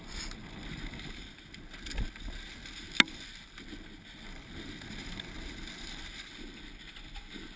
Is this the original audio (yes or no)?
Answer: yes